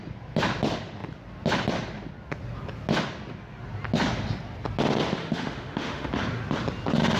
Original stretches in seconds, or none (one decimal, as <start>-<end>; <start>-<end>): 0.0-5.2; 6.1-7.2